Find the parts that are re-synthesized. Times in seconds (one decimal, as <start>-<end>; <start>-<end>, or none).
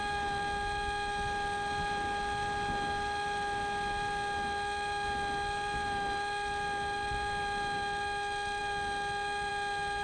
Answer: none